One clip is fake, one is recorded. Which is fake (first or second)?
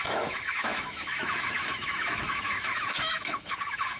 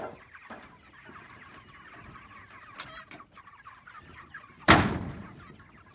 first